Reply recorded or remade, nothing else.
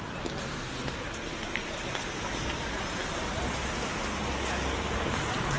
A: recorded